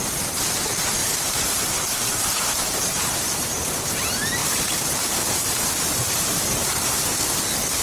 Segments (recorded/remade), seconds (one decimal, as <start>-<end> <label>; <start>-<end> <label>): 0.0-6.6 remade; 6.6-7.8 recorded